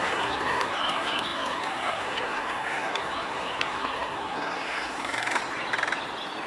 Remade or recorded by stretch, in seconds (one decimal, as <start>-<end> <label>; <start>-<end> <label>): 0.0-5.4 remade; 5.4-6.5 recorded